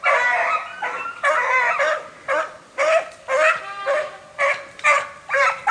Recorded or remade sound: recorded